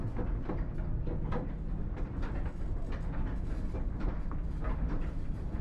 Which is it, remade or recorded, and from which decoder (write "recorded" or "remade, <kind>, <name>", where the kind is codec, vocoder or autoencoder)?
recorded